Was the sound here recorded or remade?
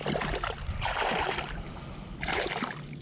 recorded